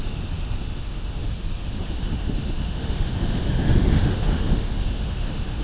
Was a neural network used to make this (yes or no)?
yes